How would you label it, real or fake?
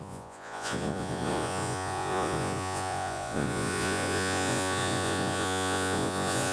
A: fake